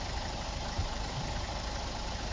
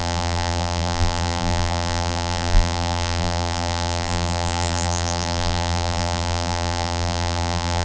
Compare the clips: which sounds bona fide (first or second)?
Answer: first